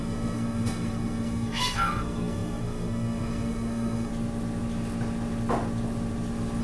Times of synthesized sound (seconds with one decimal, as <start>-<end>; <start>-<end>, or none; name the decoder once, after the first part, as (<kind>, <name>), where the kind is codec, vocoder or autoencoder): 0.0-4.1 (codec, SNAC)